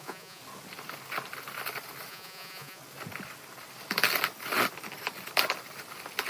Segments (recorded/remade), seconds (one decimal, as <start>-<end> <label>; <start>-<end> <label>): 0.0-0.4 remade; 0.4-2.1 recorded; 2.1-2.8 remade; 2.8-6.3 recorded